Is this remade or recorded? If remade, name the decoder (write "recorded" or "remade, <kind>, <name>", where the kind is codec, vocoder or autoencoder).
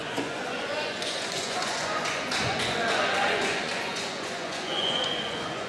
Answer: remade, vocoder, Vocos